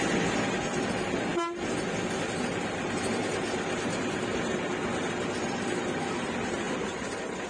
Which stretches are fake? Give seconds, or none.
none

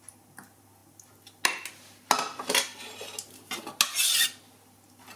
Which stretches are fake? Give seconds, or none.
none

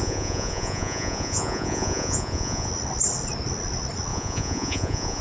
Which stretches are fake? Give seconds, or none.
0.0-2.7 (vocoder, Vocos); 4.1-5.2

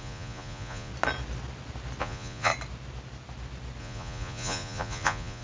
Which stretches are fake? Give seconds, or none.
0.0-0.9 (vocoder, Vocos); 2.0-2.5; 3.8-5.4